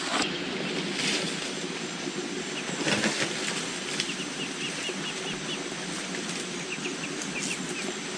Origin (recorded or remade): recorded